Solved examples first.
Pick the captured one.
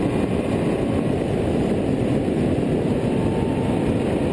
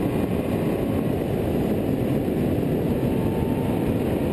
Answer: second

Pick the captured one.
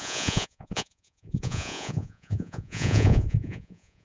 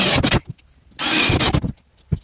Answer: second